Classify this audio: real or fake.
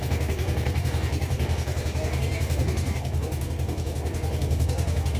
fake